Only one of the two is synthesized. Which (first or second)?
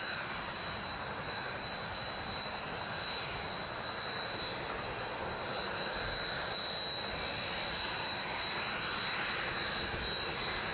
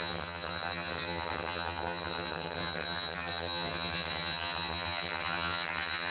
second